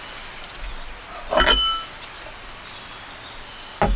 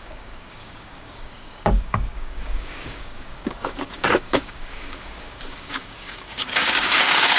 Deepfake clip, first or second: second